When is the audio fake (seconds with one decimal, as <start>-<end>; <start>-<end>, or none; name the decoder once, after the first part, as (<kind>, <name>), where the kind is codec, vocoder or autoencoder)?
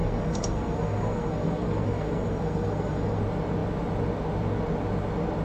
0.0-3.2 (codec, SNAC)